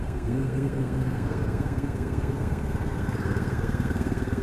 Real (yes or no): no